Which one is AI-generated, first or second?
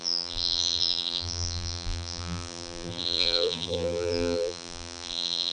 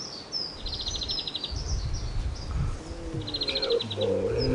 first